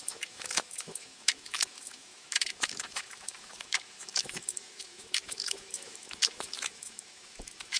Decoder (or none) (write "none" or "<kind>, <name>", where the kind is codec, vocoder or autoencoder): autoencoder, DAC-VAE